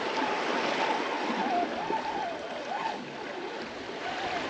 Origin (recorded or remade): recorded